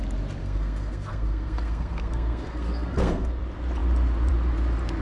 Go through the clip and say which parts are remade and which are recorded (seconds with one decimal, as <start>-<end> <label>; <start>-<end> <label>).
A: 0.0-0.4 recorded; 0.4-3.4 remade; 3.4-5.0 recorded